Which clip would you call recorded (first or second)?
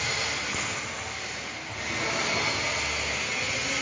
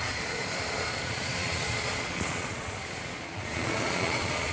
first